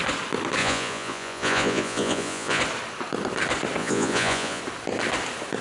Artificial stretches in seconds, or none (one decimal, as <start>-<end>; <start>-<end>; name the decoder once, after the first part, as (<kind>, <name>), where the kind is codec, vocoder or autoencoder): 0.6-2.6 (vocoder, Vocos); 3.8-4.6